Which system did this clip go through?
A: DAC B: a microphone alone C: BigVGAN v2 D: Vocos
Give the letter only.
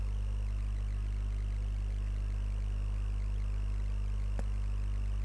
B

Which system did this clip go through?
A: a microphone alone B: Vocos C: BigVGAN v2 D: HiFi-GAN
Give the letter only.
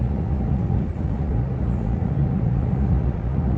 B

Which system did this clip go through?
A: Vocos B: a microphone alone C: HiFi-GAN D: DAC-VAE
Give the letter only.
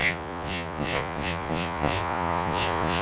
A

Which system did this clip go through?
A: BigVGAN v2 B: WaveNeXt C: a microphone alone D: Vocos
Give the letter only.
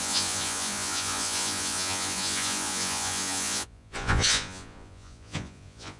D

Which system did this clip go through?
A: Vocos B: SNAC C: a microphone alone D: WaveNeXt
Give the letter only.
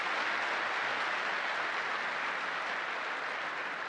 C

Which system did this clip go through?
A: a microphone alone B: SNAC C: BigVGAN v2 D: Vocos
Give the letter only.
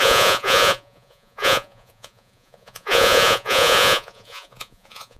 D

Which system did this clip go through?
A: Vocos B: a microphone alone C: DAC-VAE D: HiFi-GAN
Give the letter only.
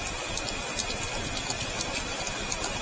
B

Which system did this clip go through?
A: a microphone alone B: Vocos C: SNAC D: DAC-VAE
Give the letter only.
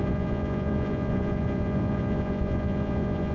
B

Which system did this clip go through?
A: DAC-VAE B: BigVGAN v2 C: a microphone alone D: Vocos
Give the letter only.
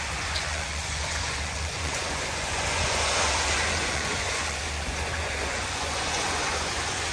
D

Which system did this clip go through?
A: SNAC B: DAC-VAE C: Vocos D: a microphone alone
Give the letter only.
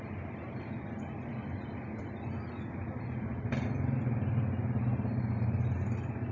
D